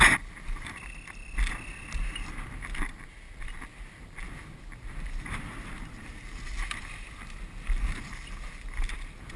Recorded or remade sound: recorded